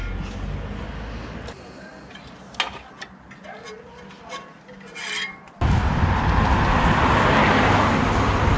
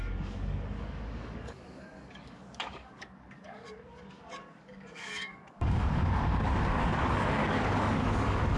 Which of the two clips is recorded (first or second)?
first